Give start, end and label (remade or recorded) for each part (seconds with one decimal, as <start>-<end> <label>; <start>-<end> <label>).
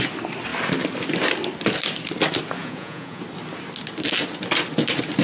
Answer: 0.0-2.6 recorded; 2.6-3.2 remade; 3.2-5.2 recorded